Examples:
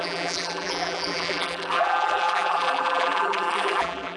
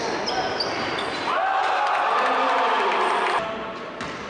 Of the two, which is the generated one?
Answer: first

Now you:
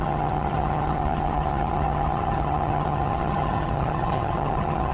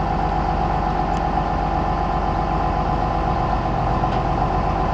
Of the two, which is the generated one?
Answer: first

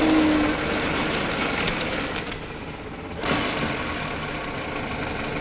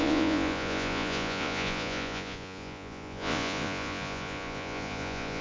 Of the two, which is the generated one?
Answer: second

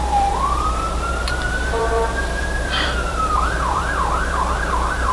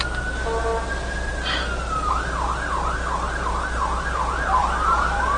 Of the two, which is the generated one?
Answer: first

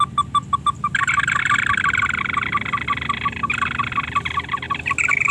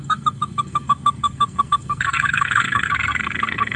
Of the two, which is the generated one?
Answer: second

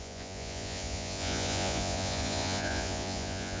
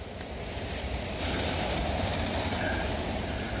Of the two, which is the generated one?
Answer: first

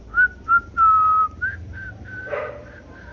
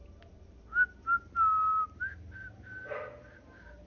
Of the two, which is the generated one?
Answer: first